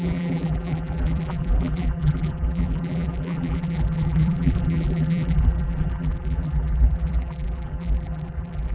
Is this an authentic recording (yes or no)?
no